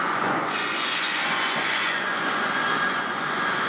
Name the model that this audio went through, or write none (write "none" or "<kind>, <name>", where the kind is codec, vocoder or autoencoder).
vocoder, Vocos